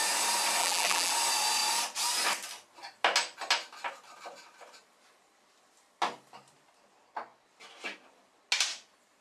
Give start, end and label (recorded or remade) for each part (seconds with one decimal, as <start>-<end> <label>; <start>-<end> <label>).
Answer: 0.0-0.6 recorded; 0.6-1.1 remade; 1.1-9.2 recorded